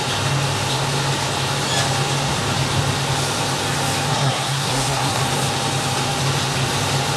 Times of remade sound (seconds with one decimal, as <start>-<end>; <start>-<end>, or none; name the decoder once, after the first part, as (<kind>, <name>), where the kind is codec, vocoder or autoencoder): 4.1-5.2 (codec, SNAC)